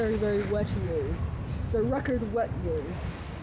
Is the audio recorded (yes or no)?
yes